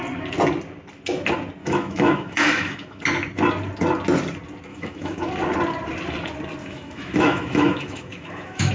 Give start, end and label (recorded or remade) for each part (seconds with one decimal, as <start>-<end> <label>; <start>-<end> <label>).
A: 0.0-1.6 recorded; 1.6-3.0 remade; 3.0-4.7 recorded; 4.7-5.3 remade; 5.3-6.6 recorded; 6.6-8.7 remade